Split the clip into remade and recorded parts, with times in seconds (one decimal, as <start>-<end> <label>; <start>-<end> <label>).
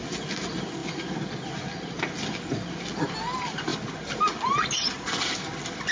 0.0-5.9 recorded